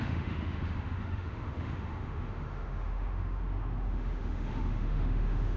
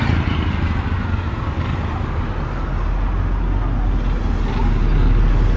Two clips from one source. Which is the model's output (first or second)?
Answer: first